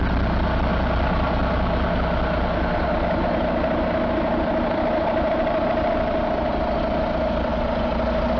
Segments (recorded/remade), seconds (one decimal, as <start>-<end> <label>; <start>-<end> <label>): 0.0-8.4 recorded